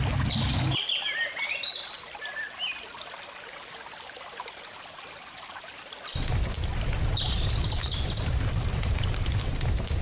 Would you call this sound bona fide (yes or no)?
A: yes